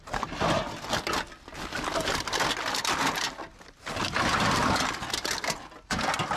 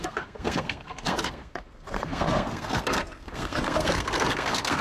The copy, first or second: second